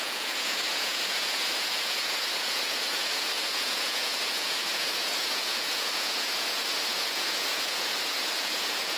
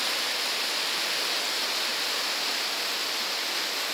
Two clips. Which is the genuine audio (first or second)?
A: second